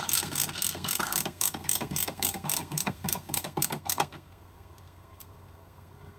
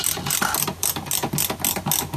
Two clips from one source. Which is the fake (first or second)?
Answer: first